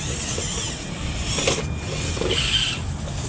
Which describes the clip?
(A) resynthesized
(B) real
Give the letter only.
B